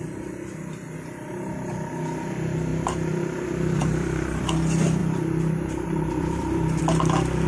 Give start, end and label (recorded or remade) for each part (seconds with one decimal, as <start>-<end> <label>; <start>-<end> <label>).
0.0-2.7 recorded; 2.7-4.4 remade; 4.4-5.0 recorded; 5.0-6.8 remade; 6.8-7.5 recorded